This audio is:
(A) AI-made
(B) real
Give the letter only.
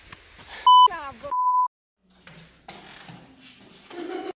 B